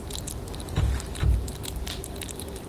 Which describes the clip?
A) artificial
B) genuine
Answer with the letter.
A